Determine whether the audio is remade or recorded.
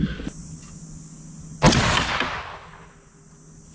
recorded